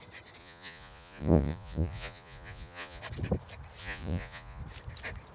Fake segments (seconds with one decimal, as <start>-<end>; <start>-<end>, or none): 0.4-3.0; 3.8-4.6